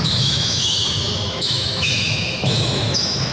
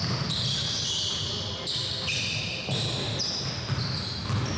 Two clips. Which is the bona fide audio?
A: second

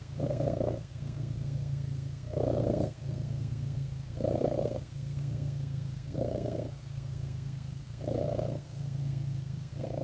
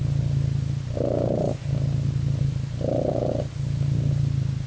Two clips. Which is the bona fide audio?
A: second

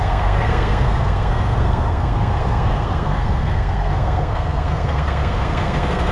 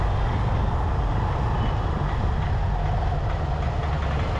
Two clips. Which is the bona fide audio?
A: second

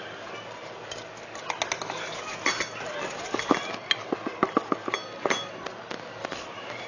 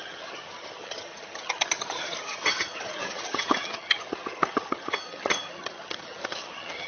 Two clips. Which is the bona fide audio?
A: first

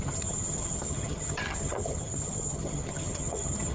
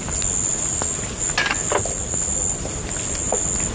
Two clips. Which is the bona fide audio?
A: second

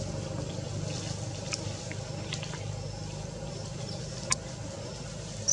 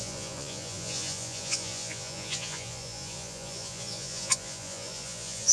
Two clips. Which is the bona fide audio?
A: first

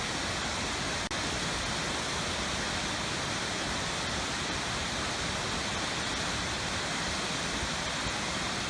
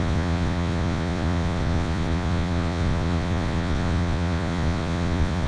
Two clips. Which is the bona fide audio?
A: first